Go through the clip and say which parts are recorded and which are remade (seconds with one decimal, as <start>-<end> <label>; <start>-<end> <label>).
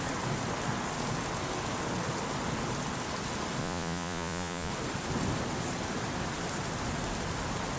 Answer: 0.0-3.6 recorded; 3.6-4.7 remade; 4.7-7.8 recorded